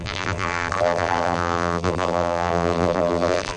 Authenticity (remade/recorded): remade